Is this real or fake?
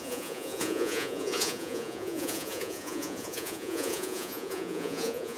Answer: fake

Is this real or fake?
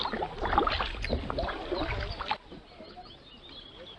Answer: real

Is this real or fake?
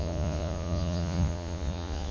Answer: fake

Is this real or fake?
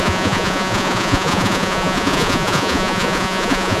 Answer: fake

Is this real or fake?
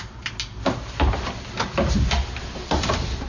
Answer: real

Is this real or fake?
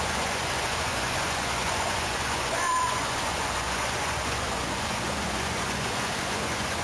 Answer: fake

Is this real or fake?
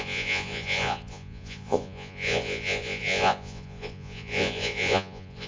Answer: fake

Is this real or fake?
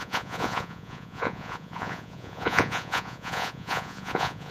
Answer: fake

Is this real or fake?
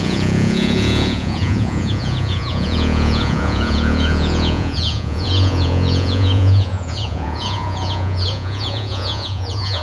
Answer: fake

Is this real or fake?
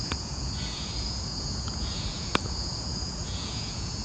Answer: fake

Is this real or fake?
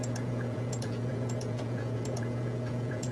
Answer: fake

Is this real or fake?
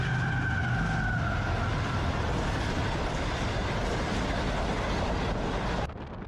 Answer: real